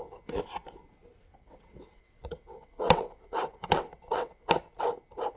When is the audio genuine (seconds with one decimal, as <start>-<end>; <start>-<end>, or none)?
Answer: 0.0-1.3; 4.5-5.4